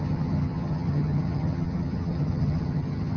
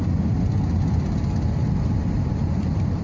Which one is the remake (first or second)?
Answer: first